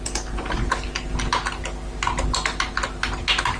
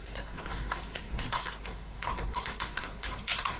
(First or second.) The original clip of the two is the first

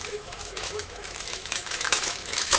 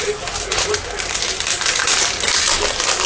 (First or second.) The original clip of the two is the second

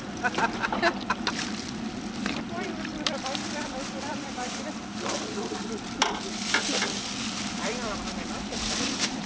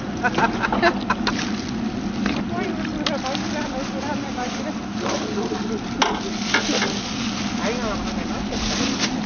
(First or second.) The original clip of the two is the second